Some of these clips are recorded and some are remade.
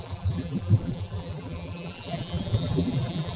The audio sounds remade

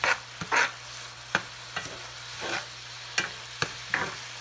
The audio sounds recorded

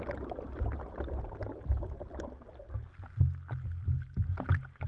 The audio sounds recorded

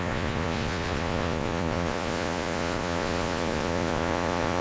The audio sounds remade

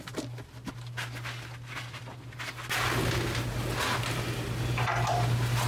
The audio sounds recorded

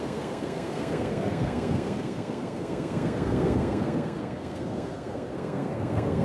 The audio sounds remade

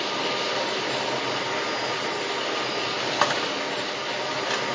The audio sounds recorded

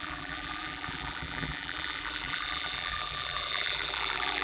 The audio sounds remade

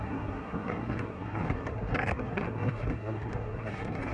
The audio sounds remade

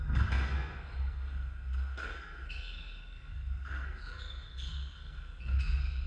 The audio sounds remade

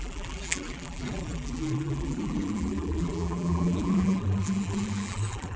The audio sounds remade